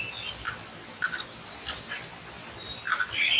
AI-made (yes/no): no